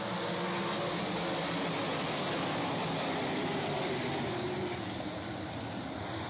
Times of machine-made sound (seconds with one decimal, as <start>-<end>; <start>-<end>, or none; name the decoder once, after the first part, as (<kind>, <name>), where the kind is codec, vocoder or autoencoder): none